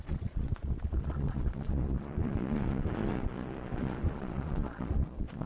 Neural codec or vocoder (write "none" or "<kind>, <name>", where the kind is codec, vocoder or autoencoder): vocoder, Vocos